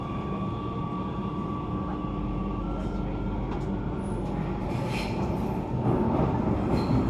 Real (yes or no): yes